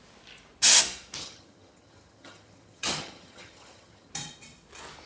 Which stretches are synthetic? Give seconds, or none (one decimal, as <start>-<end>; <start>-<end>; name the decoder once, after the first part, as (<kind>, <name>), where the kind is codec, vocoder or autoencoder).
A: 1.2-4.1 (vocoder, HiFi-GAN)

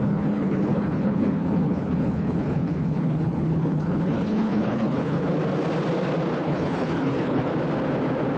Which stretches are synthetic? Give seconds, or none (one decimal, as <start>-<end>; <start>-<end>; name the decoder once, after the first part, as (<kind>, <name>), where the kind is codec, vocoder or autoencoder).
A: 0.0-5.3 (codec, HILCodec); 6.4-7.5